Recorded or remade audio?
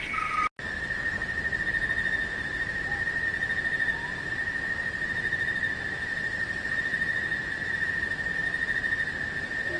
recorded